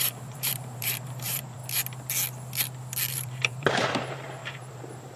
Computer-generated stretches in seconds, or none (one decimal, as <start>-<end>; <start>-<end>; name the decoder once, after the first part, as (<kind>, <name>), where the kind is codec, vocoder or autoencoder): 0.0-1.6 (vocoder, BigVGAN v2); 3.1-5.2